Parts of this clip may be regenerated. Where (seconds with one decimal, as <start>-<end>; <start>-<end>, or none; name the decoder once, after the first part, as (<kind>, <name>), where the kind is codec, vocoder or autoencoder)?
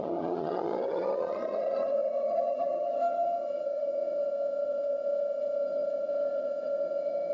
0.0-7.3 (vocoder, HiFi-GAN)